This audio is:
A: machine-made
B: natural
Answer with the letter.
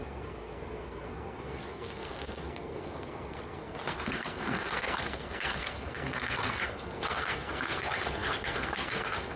A